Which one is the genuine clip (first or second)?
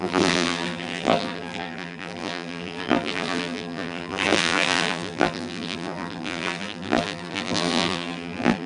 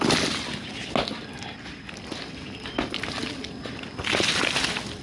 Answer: second